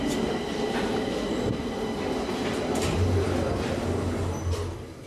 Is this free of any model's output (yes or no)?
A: yes